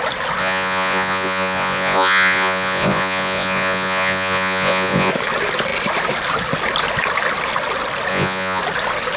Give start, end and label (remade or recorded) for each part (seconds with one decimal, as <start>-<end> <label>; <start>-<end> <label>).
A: 0.0-0.4 recorded; 0.4-5.1 remade; 5.1-8.1 recorded; 8.1-8.6 remade; 8.6-9.2 recorded